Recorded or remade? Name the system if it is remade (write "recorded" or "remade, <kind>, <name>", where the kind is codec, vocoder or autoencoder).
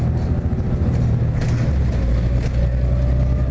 recorded